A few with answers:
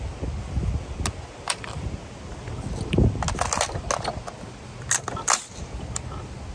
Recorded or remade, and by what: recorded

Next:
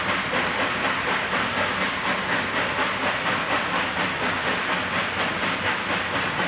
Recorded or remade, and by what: recorded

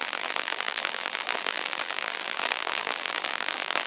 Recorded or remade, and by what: remade, vocoder, BigVGAN v2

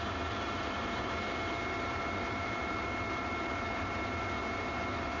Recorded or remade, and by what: remade, vocoder, BigVGAN v2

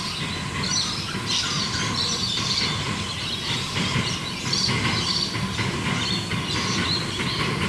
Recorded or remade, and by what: recorded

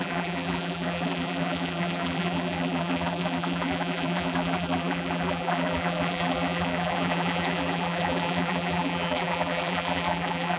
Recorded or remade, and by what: remade, vocoder, BigVGAN v2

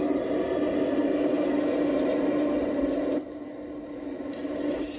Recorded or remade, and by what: recorded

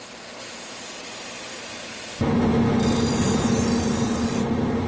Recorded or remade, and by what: recorded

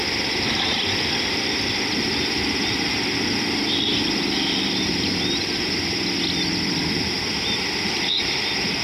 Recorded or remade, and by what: remade, vocoder, BigVGAN v2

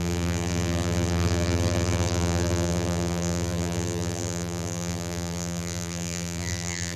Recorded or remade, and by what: remade, vocoder, BigVGAN v2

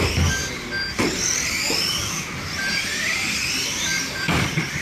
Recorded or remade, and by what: recorded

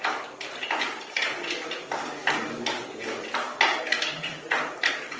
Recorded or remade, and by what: recorded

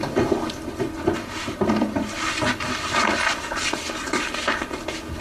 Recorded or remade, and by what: recorded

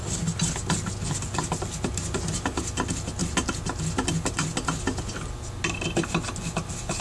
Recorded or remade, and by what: recorded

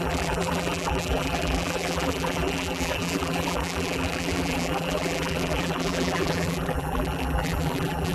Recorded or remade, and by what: remade, vocoder, BigVGAN v2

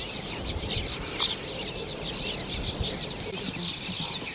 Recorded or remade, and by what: recorded